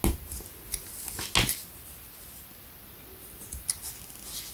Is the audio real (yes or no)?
yes